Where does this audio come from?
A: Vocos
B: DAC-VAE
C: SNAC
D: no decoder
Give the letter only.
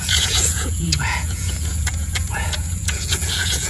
A